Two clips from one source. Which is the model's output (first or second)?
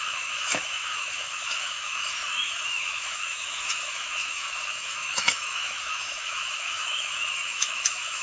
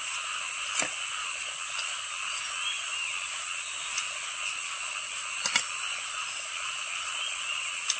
first